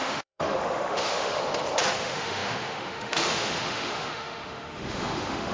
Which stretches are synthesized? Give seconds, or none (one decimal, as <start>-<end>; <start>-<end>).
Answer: 0.0-1.4; 2.0-5.5